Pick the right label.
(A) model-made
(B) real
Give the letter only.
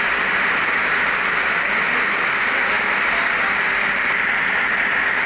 B